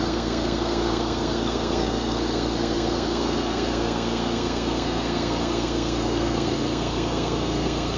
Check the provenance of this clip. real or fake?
fake